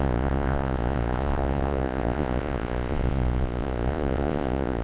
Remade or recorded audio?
remade